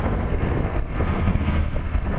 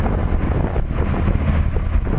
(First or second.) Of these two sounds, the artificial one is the first